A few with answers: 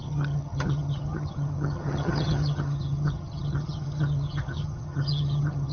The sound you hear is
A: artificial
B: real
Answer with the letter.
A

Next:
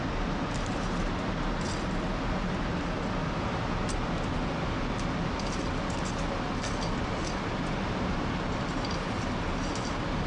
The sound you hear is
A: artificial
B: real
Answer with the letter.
B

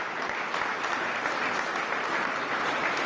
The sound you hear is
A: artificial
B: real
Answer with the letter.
B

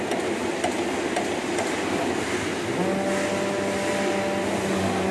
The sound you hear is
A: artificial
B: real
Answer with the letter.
B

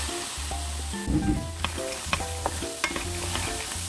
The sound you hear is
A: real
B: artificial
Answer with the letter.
A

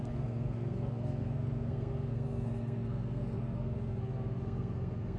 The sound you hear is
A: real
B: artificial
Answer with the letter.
B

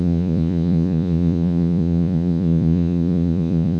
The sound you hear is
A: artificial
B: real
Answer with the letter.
A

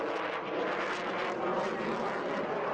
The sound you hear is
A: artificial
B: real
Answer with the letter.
B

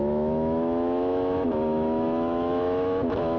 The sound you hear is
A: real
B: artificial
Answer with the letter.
B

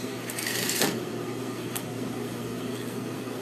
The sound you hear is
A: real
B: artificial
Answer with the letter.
B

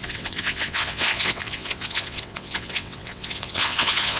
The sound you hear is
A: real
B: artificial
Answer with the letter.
B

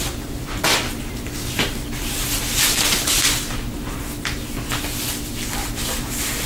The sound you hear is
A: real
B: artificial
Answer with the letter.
A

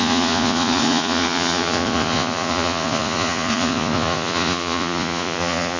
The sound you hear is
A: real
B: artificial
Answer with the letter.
B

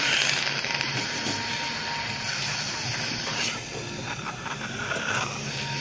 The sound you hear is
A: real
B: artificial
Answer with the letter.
A